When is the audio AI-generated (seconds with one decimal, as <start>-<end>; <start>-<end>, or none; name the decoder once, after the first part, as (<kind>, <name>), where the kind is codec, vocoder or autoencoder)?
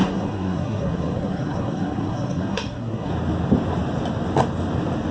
0.0-3.1 (codec, SNAC)